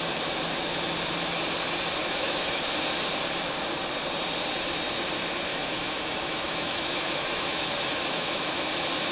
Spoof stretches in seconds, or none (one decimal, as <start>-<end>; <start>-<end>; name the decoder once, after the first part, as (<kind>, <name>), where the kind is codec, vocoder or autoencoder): 2.0-2.6 (autoencoder, DAC-VAE); 5.5-8.4